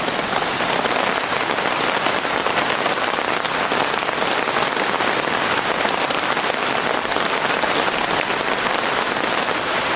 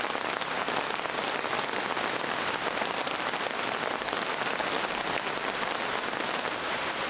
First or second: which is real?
second